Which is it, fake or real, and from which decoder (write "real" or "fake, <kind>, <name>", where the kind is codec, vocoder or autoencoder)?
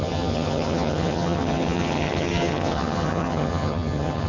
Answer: fake, vocoder, HiFi-GAN